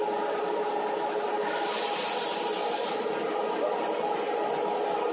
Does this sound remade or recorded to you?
recorded